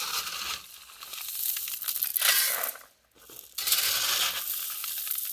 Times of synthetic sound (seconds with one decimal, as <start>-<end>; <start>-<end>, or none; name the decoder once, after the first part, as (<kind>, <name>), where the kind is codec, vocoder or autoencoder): none